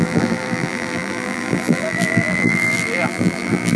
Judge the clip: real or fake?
fake